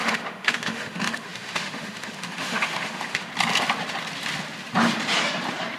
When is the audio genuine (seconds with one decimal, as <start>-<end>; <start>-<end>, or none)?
3.3-5.8